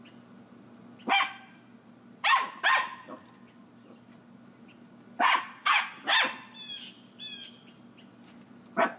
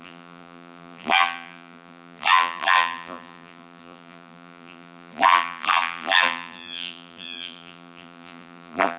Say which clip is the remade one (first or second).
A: second